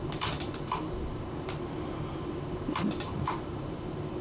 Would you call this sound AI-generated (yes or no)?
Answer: yes